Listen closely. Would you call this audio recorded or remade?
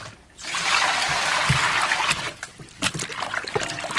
recorded